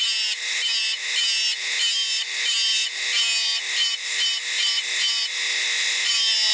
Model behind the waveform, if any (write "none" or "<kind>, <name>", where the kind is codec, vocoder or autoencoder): none